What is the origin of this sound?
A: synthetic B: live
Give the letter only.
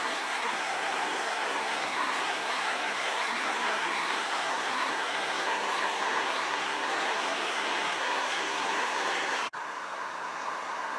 A